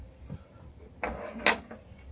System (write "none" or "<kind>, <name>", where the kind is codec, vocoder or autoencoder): none